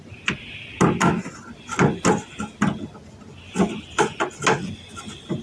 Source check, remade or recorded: recorded